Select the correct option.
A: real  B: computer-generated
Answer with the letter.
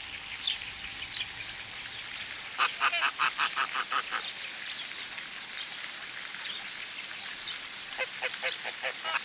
A